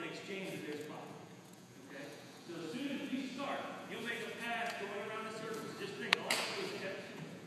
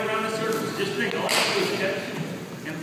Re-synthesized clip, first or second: first